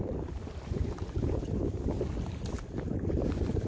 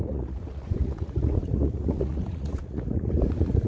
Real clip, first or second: first